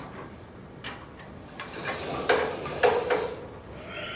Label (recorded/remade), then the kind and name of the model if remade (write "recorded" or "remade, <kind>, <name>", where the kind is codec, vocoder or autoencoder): recorded